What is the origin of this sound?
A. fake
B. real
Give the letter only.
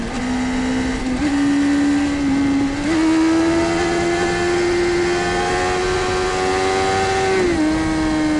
B